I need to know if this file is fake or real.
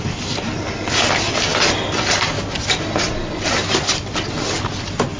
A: real